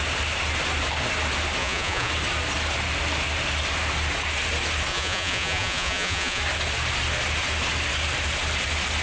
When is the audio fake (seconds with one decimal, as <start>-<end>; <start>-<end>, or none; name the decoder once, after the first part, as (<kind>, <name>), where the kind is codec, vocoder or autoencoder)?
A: 1.6-2.1 (vocoder, Vocos); 4.9-6.4